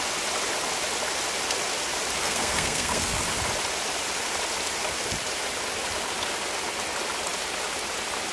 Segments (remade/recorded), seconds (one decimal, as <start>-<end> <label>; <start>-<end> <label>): 0.0-2.2 recorded; 2.2-3.2 remade; 3.2-8.3 recorded